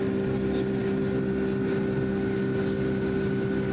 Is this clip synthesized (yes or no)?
no